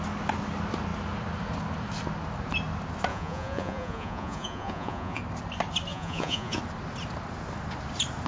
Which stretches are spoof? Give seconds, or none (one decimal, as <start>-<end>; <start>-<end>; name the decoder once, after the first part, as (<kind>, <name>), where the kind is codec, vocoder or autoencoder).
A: 3.1-5.2 (vocoder, Vocos); 5.9-6.6